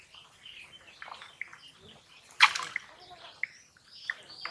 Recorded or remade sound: recorded